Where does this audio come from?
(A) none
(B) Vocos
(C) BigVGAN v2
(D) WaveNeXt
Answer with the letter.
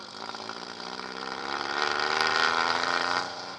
C